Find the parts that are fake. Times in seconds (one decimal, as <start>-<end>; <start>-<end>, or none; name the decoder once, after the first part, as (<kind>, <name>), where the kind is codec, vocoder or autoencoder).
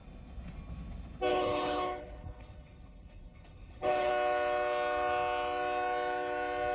1.3-4.1 (codec, HILCodec)